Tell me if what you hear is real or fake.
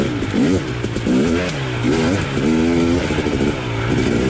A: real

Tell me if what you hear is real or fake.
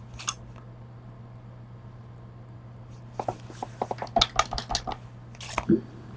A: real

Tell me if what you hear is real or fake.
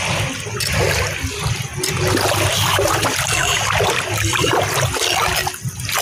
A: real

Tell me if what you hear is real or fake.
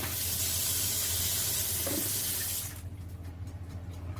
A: real